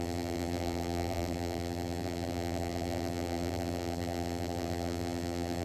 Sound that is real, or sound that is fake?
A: fake